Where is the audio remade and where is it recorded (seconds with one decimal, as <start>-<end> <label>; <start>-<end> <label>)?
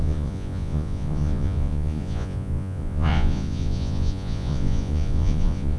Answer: 0.0-5.8 remade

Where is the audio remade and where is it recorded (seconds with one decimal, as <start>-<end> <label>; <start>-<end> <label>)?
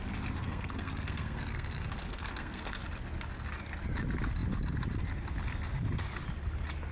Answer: 0.0-0.4 recorded; 0.4-2.8 remade; 2.8-6.9 recorded